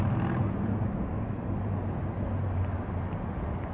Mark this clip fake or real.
real